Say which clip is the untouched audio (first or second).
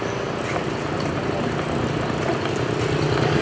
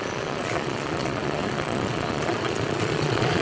first